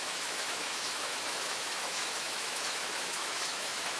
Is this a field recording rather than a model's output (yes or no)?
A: no